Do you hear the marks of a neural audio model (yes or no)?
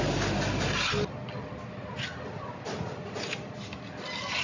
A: no